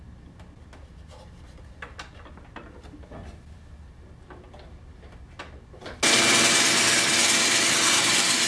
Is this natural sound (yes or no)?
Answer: yes